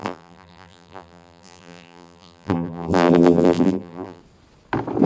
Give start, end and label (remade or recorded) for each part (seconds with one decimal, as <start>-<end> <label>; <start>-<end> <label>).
0.0-4.2 remade; 4.2-5.1 recorded